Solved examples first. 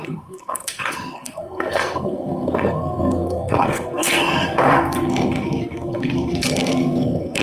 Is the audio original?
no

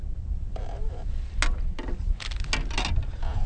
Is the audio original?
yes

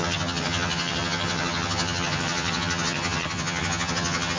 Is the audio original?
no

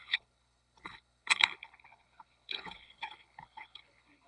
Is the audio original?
no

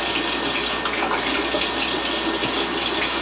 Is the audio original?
yes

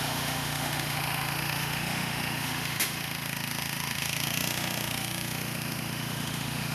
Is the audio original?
no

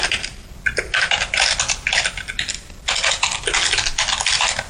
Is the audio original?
yes